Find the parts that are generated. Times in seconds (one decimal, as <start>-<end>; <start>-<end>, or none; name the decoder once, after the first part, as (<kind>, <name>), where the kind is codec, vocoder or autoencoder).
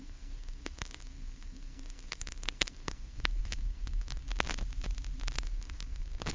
0.0-4.2 (codec, SNAC); 5.4-6.3